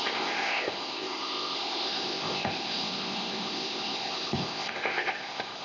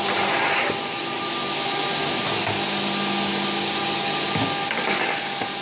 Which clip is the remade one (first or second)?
first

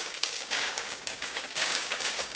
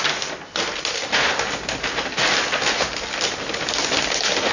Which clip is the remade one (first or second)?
first